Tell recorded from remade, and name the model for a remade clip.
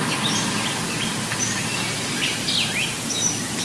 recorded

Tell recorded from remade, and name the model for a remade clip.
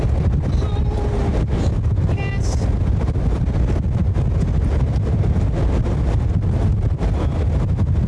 recorded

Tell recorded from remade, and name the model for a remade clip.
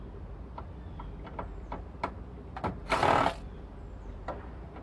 recorded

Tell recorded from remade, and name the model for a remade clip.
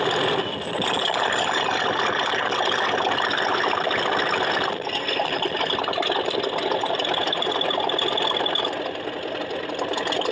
recorded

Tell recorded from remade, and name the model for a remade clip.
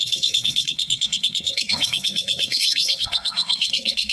remade, codec, SNAC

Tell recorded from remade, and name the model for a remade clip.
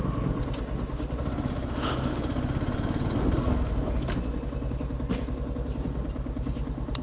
recorded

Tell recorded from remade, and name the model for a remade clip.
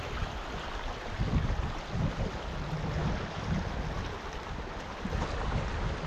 recorded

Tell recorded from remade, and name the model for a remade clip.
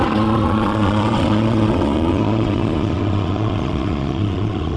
remade, vocoder, Vocos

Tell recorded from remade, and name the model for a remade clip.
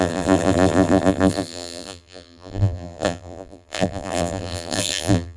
remade, vocoder, BigVGAN v2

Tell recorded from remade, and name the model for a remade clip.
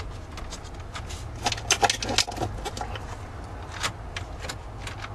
recorded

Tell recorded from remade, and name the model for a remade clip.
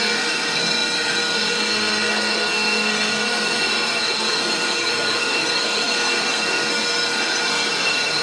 remade, codec, SNAC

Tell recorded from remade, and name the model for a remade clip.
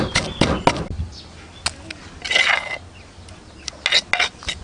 recorded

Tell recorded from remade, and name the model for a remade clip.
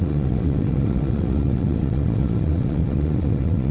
remade, vocoder, WaveNeXt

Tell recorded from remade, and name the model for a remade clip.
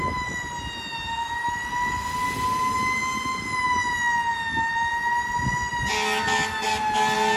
recorded